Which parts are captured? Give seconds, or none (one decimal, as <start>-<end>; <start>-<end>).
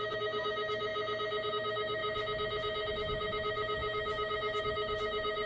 0.9-1.5; 2.0-2.9